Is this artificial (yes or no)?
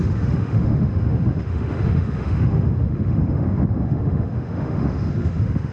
yes